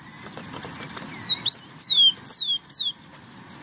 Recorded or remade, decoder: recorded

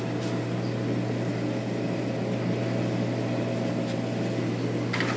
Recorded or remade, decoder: recorded